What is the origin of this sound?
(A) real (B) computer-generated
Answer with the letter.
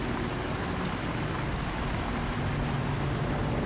A